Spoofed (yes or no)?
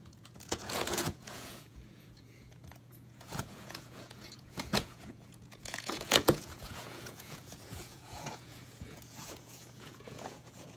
yes